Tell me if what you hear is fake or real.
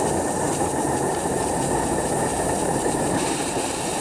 fake